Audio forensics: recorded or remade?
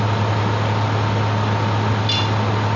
recorded